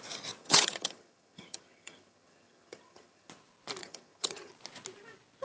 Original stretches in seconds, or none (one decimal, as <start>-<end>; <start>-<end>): 0.0-0.4; 3.3-3.8; 4.5-5.4

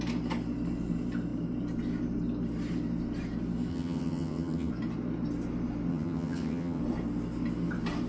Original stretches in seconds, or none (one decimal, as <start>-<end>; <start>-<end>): 0.0-3.7; 4.7-5.9; 6.8-8.1

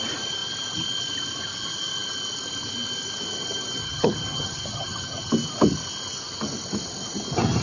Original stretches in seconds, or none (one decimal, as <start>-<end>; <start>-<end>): 0.0-3.8; 5.3-7.6

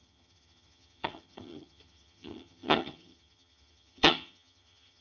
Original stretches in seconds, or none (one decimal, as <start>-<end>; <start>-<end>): none